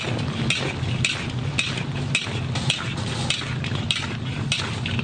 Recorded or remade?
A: recorded